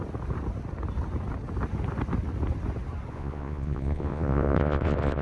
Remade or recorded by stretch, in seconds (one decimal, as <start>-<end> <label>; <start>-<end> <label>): 0.0-3.1 recorded; 3.1-5.2 remade